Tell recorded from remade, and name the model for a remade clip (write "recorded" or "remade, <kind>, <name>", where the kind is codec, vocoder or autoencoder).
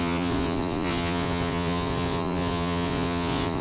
remade, vocoder, Vocos